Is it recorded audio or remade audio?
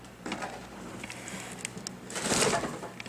recorded